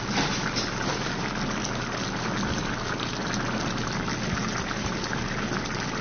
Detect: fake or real real